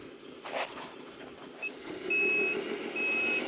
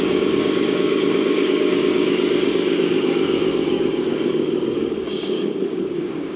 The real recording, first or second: first